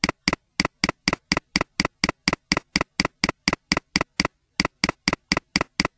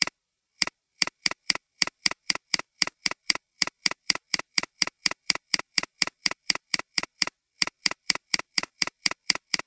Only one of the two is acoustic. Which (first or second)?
first